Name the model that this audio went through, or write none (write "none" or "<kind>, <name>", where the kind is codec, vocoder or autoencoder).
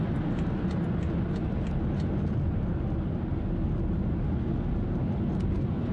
none